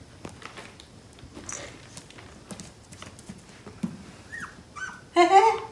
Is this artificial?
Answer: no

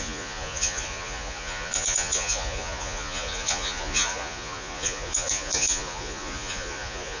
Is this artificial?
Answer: yes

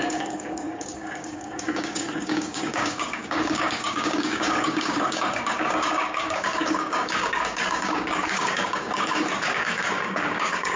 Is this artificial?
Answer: yes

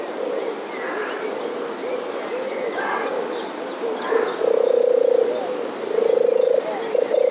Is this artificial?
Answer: no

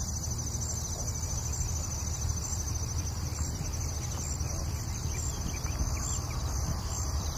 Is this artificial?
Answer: no